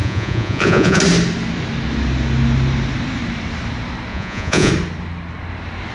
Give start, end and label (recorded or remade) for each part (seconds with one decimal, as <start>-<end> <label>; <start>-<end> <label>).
0.0-1.0 remade; 1.0-4.1 recorded; 4.1-4.7 remade; 4.7-5.9 recorded